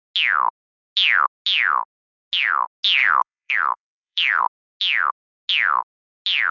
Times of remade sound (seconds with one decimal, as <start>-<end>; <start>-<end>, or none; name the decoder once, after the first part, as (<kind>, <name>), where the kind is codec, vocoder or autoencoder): 3.0-4.4 (autoencoder, DAC-VAE)